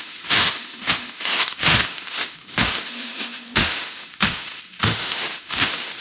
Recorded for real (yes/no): no